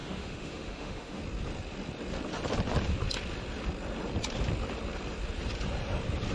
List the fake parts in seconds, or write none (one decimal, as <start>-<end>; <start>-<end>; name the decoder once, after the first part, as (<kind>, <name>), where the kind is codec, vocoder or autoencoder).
0.0-1.2 (autoencoder, DAC-VAE)